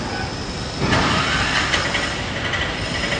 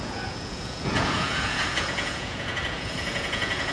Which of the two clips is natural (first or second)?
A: first